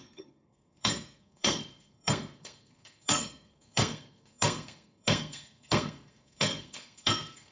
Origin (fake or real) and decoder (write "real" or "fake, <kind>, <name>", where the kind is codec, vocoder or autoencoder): fake, codec, SNAC